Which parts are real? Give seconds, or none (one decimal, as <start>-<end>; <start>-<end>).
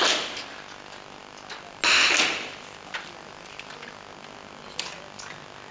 0.0-5.7